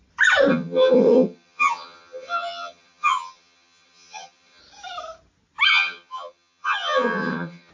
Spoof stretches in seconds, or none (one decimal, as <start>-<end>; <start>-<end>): 0.5-4.6; 5.7-7.7